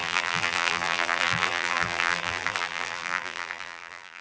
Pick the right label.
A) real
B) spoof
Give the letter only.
B